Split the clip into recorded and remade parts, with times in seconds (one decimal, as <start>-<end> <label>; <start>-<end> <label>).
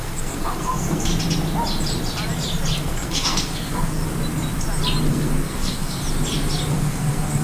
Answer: 0.0-1.1 remade; 1.1-2.8 recorded; 2.8-4.0 remade; 4.0-5.1 recorded; 5.1-6.0 remade; 6.0-6.7 recorded; 6.7-7.4 remade